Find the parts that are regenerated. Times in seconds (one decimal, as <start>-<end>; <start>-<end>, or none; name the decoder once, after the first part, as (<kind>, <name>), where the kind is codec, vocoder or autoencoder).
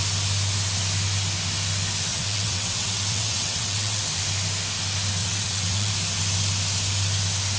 2.1-4.0 (vocoder, WaveNeXt); 5.2-5.9